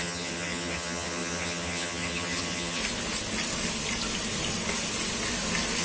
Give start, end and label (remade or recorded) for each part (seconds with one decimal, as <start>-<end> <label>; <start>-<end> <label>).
0.0-2.8 remade; 2.8-5.8 recorded